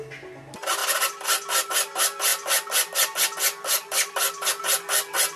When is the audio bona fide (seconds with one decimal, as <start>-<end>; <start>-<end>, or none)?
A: 0.0-5.4